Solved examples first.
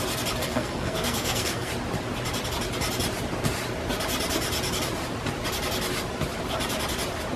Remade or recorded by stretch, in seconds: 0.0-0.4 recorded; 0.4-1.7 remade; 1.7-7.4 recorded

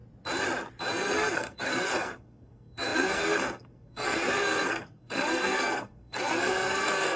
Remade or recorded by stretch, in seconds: 0.0-0.9 recorded; 0.9-7.2 remade

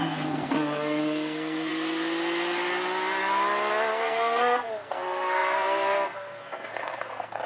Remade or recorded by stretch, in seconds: 0.0-1.7 remade; 1.7-3.9 recorded; 3.9-7.5 remade